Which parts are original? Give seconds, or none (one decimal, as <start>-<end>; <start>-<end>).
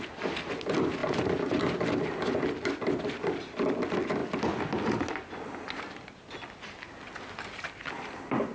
0.0-8.5